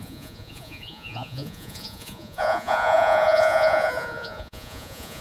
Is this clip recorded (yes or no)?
no